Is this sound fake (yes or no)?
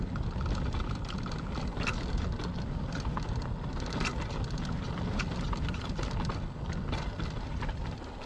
no